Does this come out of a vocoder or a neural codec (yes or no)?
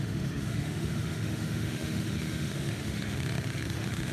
yes